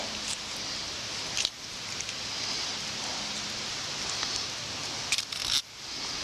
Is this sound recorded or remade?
recorded